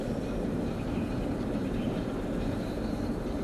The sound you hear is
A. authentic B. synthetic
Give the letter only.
B